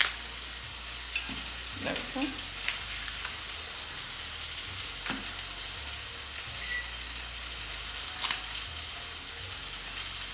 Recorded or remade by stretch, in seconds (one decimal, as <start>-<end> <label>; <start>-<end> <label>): 0.0-10.3 recorded

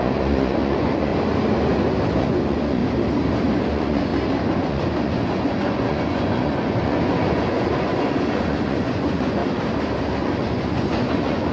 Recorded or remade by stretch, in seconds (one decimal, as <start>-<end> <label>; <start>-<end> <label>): 0.0-1.1 remade; 1.1-2.2 recorded; 2.2-2.8 remade; 2.8-3.6 recorded; 3.6-4.1 remade; 4.1-4.6 recorded; 4.6-9.4 remade; 9.4-10.2 recorded; 10.2-11.5 remade